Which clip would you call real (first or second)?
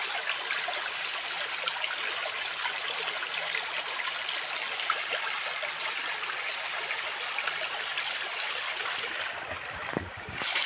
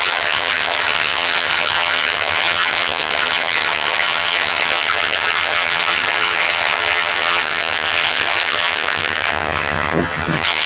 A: first